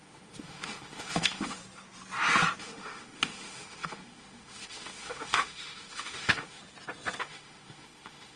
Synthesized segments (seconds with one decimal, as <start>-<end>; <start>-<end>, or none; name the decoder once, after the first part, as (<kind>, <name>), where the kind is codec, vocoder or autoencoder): 0.0-1.6 (autoencoder, DAC-VAE); 2.6-6.6; 7.2-8.4